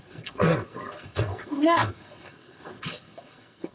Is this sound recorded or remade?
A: remade